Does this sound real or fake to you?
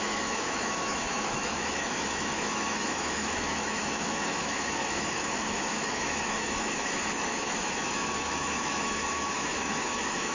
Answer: fake